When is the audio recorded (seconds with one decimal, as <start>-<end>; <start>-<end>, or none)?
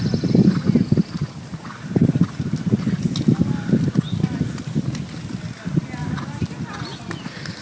0.0-7.6